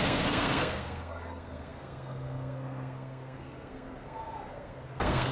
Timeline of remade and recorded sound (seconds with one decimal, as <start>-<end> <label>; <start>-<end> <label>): 0.0-5.3 remade